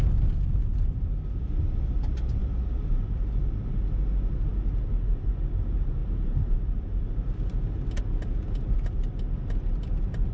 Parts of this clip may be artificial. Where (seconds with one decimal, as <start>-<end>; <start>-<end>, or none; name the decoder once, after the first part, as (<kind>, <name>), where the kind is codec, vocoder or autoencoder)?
2.4-2.9 (vocoder, BigVGAN v2); 6.0-7.9